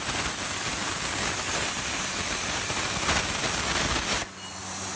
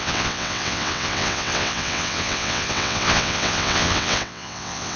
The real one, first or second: first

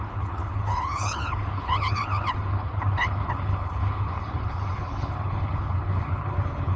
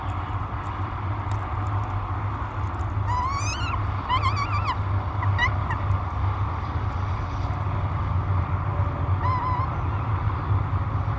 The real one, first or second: second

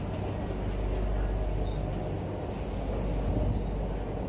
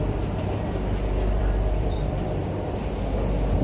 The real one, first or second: first